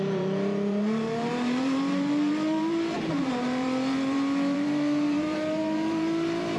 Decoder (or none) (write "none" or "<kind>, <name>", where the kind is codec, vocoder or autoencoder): vocoder, BigVGAN v2